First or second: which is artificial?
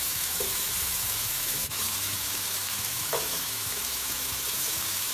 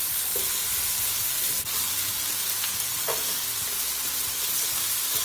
first